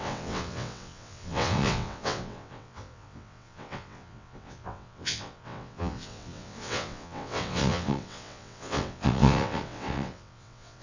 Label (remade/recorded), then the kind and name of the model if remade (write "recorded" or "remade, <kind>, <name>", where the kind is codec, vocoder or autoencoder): remade, vocoder, WaveNeXt